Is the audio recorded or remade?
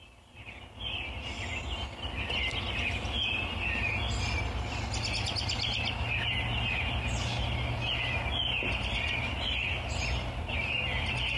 recorded